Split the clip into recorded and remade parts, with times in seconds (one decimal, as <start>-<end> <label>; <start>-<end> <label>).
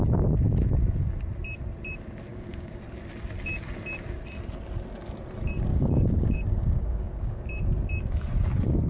0.0-2.3 recorded; 2.3-2.8 remade; 2.8-5.7 recorded; 5.7-7.4 remade; 7.4-8.9 recorded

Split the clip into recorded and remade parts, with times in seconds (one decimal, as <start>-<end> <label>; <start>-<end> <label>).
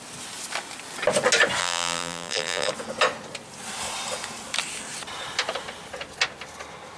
0.0-1.6 recorded; 1.6-2.7 remade; 2.7-7.0 recorded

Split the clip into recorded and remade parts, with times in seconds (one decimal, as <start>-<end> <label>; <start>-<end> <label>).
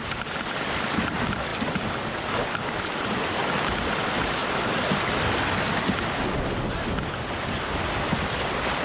0.0-8.8 recorded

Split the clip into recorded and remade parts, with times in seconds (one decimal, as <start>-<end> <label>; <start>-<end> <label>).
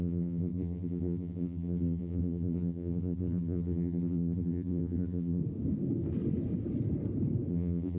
0.0-5.4 remade; 5.4-7.5 recorded; 7.5-8.0 remade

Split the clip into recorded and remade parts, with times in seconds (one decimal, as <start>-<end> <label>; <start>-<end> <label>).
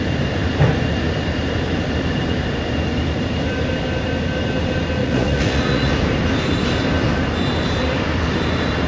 0.0-5.0 recorded; 5.0-5.9 remade; 5.9-8.9 recorded